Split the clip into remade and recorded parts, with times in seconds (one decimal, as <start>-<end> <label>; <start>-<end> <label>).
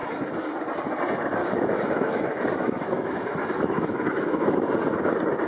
0.0-1.4 recorded; 1.4-4.7 remade; 4.7-5.5 recorded